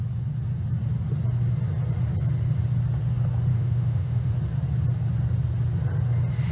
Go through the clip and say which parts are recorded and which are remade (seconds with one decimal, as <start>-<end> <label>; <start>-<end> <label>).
0.0-3.5 recorded; 3.5-4.3 remade; 4.3-6.5 recorded